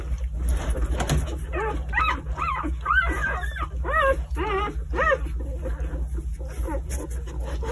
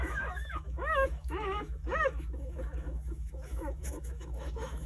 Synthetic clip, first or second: second